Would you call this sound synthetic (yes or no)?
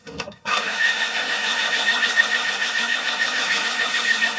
yes